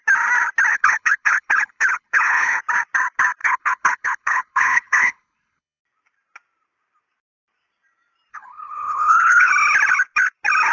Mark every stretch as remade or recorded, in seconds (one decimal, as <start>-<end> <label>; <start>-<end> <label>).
0.0-0.7 recorded; 0.7-2.6 remade; 2.6-3.4 recorded; 3.4-5.8 remade; 5.8-8.3 recorded; 8.3-9.5 remade; 9.5-10.7 recorded